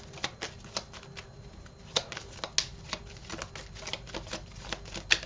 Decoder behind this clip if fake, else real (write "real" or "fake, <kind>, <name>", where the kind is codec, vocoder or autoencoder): real